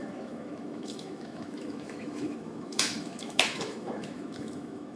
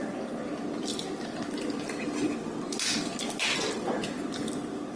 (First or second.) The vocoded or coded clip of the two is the first